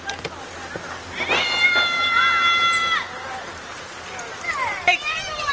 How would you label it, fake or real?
real